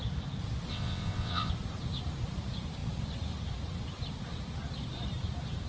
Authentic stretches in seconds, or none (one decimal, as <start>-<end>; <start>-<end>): 0.0-0.7; 1.5-5.7